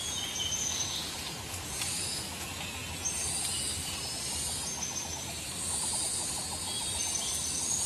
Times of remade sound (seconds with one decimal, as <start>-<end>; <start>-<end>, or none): 0.0-2.8; 7.5-7.9